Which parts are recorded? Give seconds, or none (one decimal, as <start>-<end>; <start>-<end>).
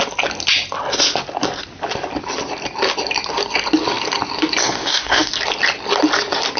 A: 0.0-4.6; 5.3-6.6